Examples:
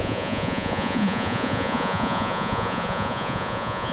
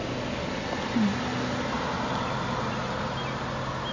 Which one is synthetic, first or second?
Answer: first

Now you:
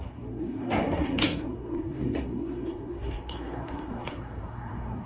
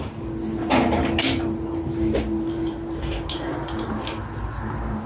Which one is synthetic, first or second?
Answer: first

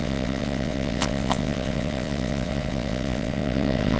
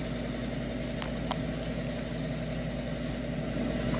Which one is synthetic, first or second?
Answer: first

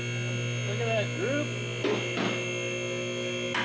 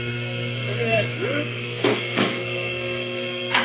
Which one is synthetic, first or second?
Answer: second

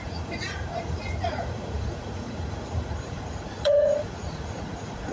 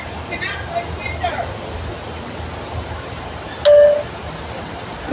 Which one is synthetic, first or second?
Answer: first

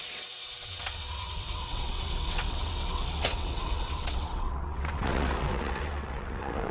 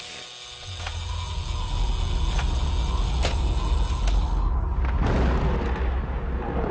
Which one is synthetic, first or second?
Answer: first